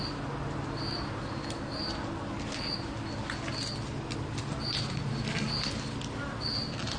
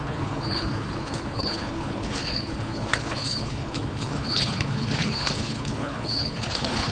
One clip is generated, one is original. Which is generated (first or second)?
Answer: second